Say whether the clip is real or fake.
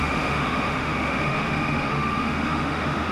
fake